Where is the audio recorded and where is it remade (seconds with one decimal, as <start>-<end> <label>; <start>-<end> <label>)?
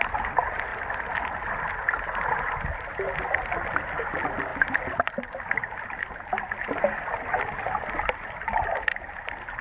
0.0-9.6 recorded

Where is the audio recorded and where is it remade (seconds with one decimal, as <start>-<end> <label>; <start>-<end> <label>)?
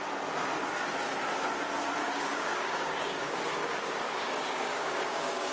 0.0-2.0 recorded; 2.0-5.5 remade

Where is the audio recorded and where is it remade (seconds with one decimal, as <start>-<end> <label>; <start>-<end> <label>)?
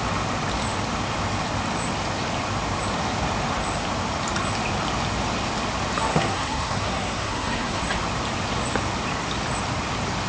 0.0-6.1 recorded; 6.1-7.8 remade; 7.8-10.3 recorded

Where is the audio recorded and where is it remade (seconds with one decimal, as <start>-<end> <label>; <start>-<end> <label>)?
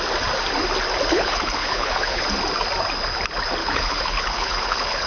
0.0-1.1 recorded; 1.1-2.2 remade; 2.2-3.6 recorded; 3.6-5.1 remade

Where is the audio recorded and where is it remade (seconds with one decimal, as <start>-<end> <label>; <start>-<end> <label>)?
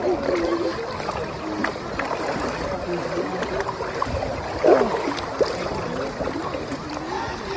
0.0-7.6 recorded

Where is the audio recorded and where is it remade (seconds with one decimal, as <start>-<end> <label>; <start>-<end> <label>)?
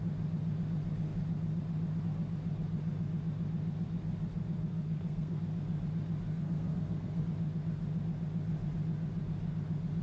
0.0-4.7 recorded; 4.7-5.4 remade; 5.4-6.3 recorded; 6.3-7.2 remade; 7.2-10.0 recorded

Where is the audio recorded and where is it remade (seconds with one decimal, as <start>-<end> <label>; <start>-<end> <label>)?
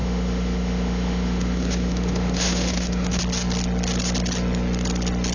0.0-3.2 remade; 3.2-5.3 recorded